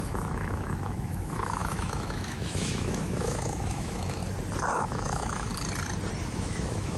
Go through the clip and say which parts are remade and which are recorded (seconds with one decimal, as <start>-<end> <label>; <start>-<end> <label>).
0.0-4.2 remade; 4.2-4.7 recorded; 4.7-5.5 remade; 5.5-6.3 recorded; 6.3-7.0 remade